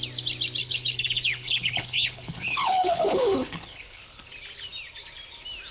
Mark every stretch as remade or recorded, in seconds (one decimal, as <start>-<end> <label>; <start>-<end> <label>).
0.0-0.6 recorded; 0.6-4.0 remade; 4.0-5.7 recorded